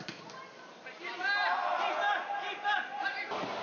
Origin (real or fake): real